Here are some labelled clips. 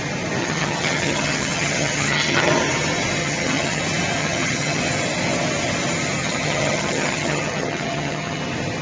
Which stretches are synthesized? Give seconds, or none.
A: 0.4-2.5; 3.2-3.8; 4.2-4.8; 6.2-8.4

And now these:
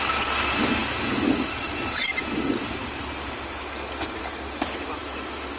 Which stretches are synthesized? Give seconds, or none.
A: none

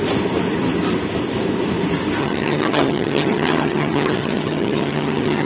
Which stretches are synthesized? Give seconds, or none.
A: 2.2-5.5

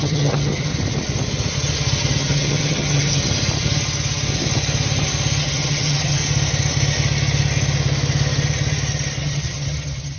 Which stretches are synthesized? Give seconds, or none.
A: 0.0-0.7; 2.2-3.2; 5.4-6.2; 9.2-10.2

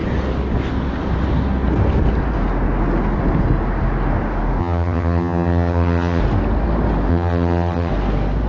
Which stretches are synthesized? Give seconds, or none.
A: 4.6-6.2; 7.1-7.9